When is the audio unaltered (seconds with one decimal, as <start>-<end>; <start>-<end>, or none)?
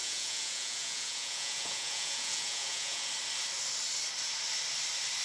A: 3.1-5.2